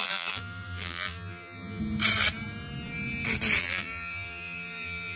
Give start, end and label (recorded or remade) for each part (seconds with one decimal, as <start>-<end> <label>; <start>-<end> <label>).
0.0-1.8 remade; 1.8-3.6 recorded; 3.6-5.2 remade